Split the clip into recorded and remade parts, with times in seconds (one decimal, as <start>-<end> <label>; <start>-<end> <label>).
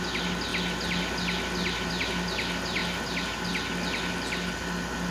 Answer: 0.0-5.1 recorded